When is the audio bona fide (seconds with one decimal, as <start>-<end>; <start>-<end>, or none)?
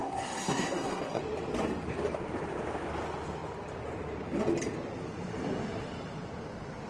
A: 1.2-6.9